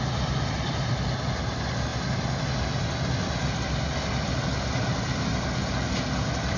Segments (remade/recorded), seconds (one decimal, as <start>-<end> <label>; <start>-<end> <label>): 0.0-6.6 recorded